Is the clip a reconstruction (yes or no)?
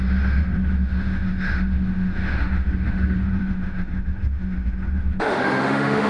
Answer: yes